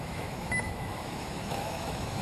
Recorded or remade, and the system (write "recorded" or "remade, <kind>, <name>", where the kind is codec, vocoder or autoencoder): remade, autoencoder, DAC-VAE